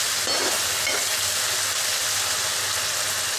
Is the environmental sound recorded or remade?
recorded